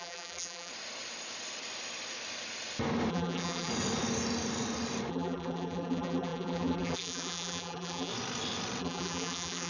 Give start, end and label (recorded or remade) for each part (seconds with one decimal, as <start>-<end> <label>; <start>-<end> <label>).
0.0-0.7 remade; 0.7-3.1 recorded; 3.1-3.7 remade; 3.7-5.1 recorded; 5.1-8.1 remade; 8.1-8.8 recorded; 8.8-9.7 remade